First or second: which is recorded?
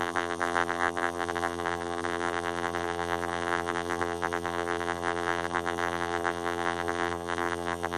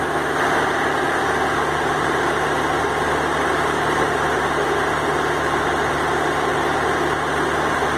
second